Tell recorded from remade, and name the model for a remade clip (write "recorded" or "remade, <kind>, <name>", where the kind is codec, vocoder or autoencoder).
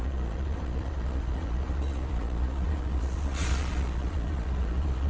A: remade, vocoder, Vocos